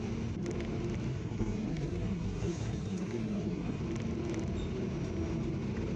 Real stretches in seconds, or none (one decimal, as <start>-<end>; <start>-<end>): 0.0-1.1; 3.8-6.0